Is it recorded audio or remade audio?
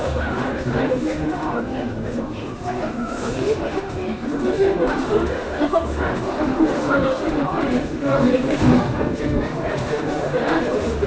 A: remade